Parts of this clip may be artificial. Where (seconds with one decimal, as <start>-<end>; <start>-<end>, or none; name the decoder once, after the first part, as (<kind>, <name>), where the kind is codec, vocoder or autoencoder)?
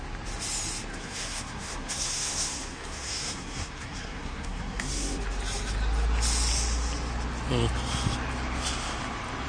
0.9-5.2 (codec, SNAC)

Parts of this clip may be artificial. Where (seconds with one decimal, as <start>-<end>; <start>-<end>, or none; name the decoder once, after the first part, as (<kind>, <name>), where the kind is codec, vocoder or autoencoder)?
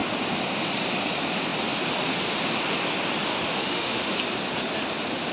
3.3-4.1 (autoencoder, DAC-VAE)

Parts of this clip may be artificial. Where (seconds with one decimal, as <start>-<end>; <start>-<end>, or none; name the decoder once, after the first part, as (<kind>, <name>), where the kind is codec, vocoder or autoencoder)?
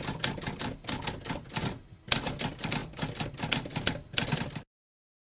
none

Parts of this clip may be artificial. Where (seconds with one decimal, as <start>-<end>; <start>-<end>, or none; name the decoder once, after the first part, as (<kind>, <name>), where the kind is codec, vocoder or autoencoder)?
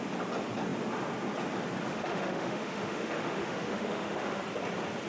1.9-4.4 (autoencoder, DAC-VAE)